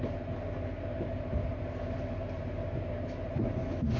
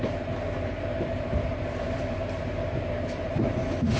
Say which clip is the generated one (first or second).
second